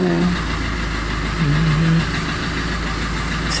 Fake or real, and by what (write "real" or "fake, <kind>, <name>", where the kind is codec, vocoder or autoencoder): real